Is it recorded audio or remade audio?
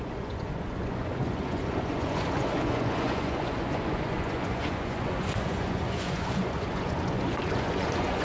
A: remade